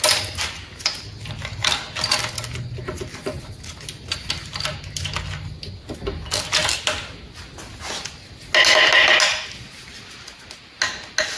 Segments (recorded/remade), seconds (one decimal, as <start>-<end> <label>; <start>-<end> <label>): 0.0-11.4 recorded